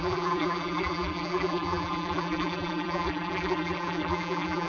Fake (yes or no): yes